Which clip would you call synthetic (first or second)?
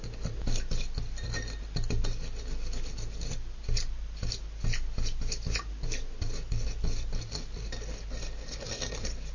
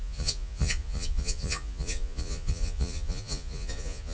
second